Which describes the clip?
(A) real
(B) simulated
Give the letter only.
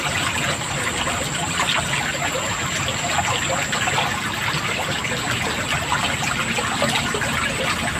A